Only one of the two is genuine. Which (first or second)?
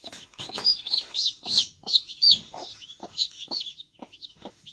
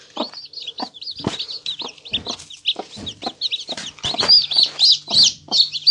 second